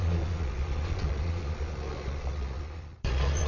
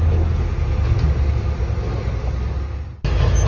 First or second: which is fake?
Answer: first